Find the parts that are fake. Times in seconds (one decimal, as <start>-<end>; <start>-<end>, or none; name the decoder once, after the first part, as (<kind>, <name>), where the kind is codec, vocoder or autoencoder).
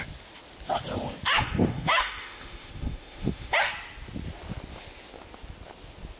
1.3-3.7 (autoencoder, DAC-VAE)